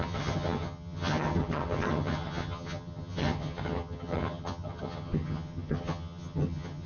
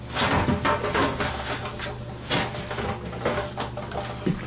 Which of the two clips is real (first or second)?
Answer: second